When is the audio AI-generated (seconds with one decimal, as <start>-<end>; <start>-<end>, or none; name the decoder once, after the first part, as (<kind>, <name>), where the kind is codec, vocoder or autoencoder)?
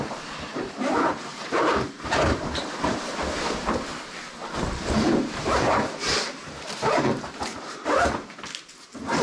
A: 0.0-3.9 (vocoder, BigVGAN v2); 4.5-9.2